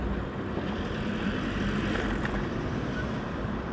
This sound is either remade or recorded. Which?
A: remade